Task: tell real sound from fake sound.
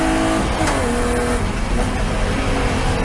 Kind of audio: real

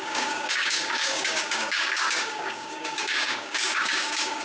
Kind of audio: fake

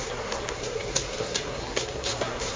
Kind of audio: fake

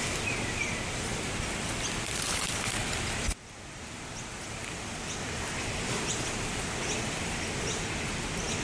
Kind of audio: real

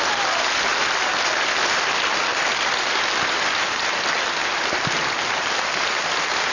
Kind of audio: real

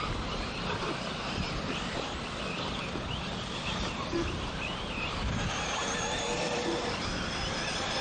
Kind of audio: fake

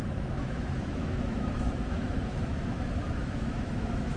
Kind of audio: fake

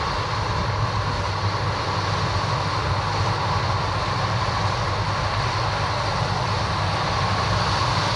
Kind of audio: real